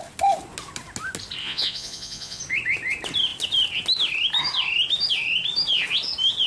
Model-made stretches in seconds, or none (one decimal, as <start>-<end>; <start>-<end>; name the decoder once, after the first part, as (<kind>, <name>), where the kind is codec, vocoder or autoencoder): 1.4-2.4 (vocoder, Vocos)